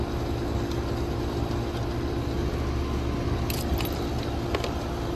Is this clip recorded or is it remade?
recorded